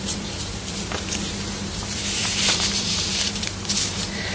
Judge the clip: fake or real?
fake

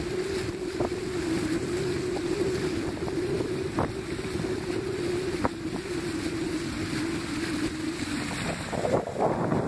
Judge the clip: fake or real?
real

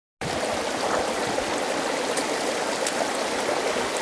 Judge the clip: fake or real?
real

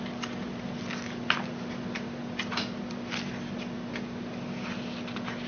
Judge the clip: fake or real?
real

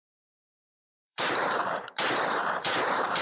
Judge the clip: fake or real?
fake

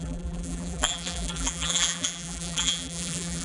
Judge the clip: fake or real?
fake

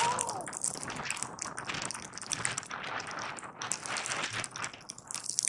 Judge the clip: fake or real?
fake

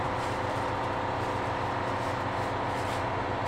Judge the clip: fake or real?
real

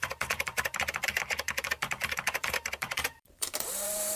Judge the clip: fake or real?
fake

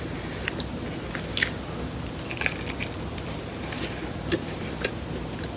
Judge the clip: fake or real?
real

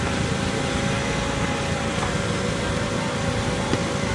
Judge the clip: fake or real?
real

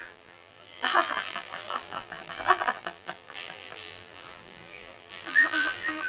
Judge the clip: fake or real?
fake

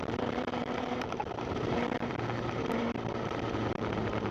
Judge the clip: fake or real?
fake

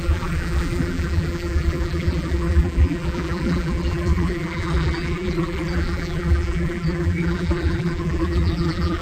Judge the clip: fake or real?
fake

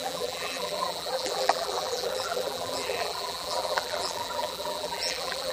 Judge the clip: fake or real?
fake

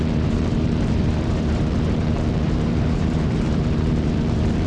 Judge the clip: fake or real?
fake